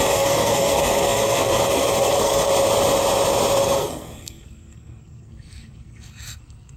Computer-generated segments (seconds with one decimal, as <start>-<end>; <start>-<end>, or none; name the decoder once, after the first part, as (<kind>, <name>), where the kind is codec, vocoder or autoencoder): 0.0-2.5 (codec, SNAC); 3.6-6.8